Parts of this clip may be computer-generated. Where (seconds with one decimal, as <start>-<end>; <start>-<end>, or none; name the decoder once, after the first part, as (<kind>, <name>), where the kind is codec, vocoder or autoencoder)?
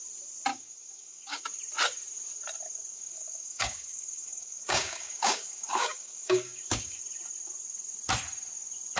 0.5-1.5 (codec, DAC); 2.9-7.0